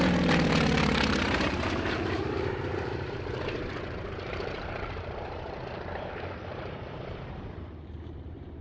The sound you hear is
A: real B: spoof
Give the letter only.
B